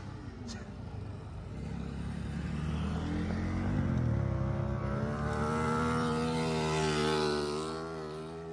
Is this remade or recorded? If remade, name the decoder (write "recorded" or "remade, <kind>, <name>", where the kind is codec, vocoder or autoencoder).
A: recorded